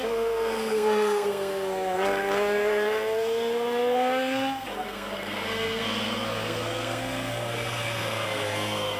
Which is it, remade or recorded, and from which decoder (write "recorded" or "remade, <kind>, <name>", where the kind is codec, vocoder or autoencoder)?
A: remade, codec, SNAC